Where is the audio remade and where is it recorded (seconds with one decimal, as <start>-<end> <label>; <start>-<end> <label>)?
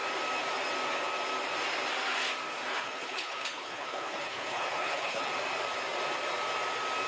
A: 0.0-2.7 recorded; 2.7-5.3 remade; 5.3-7.1 recorded